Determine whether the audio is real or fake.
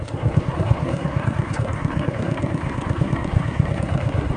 fake